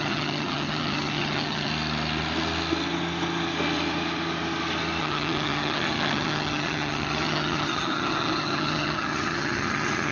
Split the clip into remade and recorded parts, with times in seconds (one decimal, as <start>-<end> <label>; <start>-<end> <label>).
0.0-1.7 remade; 1.7-5.0 recorded; 5.0-10.1 remade